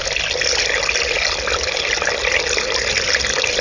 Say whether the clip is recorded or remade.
recorded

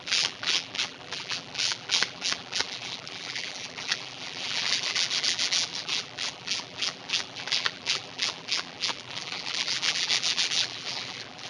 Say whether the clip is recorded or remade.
remade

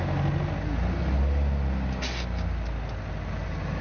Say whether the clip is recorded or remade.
recorded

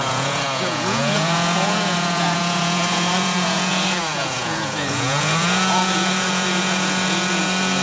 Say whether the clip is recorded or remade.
remade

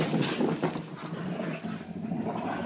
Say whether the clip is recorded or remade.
recorded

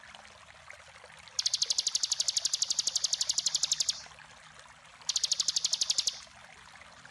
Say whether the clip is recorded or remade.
recorded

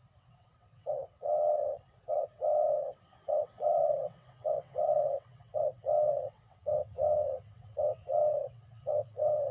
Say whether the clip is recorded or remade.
remade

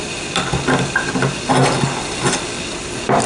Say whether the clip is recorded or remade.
recorded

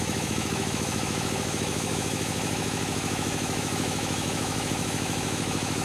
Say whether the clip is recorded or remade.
remade